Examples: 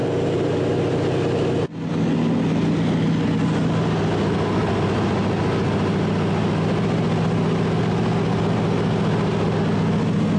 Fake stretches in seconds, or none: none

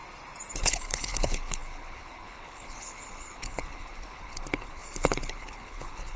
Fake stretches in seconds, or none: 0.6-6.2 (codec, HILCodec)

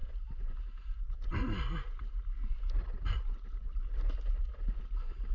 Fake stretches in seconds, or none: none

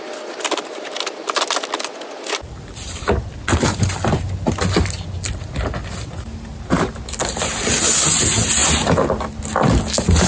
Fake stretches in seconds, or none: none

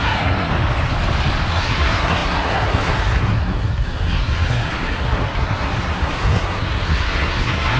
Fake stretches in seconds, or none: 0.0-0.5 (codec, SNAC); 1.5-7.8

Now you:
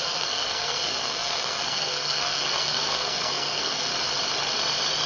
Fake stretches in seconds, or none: 0.0-3.9 (codec, SNAC)